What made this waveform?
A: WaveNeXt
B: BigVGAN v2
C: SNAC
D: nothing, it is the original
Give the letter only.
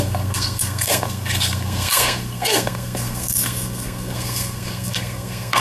C